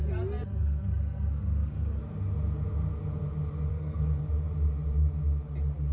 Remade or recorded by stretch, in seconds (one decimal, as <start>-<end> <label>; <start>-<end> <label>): 0.0-0.6 recorded; 0.6-2.0 remade; 2.0-3.7 recorded; 3.7-4.2 remade; 4.2-5.9 recorded